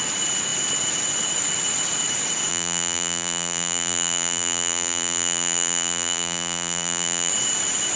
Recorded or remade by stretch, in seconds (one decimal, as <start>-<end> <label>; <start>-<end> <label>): 0.0-2.5 recorded; 2.5-7.3 remade; 7.3-8.0 recorded